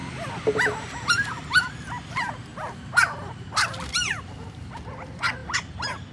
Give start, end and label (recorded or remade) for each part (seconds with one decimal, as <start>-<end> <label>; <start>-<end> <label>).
0.0-2.5 remade; 2.5-4.2 recorded; 4.2-6.1 remade